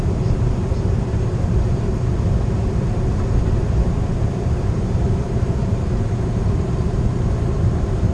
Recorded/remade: remade